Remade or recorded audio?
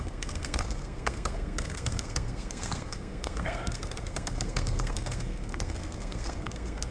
remade